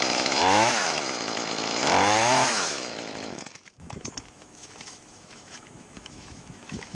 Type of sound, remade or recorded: remade